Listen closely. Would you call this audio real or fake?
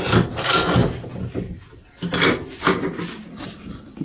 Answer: real